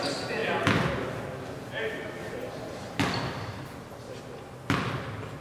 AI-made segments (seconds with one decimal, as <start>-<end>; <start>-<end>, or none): 2.2-3.0